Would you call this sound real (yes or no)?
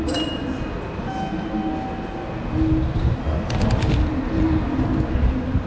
yes